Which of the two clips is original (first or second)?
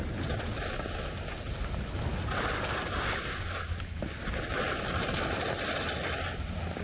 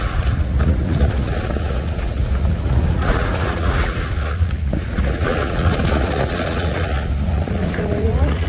first